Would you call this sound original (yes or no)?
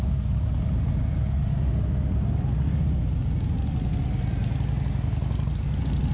yes